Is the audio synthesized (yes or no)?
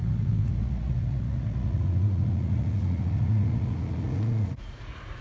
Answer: yes